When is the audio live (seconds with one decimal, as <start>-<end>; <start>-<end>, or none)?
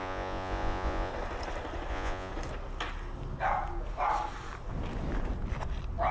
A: 1.1-1.9; 2.3-6.1